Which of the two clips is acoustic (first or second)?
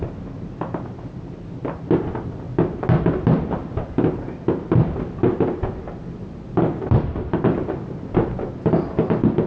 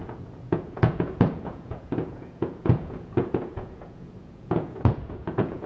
first